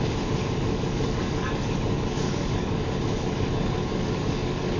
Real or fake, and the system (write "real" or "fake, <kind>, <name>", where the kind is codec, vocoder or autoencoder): fake, codec, DAC